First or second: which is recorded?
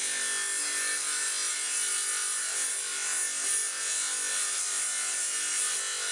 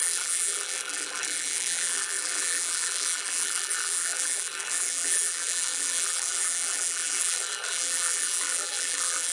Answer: first